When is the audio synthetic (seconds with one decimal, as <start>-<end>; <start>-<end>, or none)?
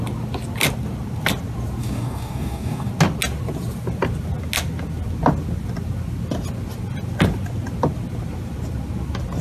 1.8-2.9